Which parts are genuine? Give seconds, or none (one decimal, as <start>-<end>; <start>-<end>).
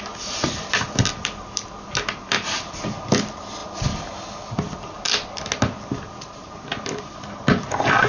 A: 0.0-8.1